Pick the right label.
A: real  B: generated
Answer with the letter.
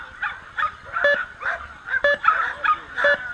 A